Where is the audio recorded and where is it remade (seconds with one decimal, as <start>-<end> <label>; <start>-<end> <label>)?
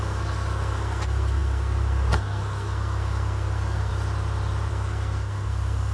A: 0.0-3.9 remade; 3.9-4.7 recorded; 4.7-5.9 remade